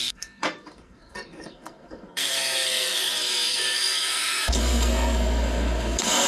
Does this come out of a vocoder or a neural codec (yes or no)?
yes